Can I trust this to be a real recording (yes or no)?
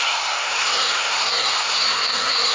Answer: no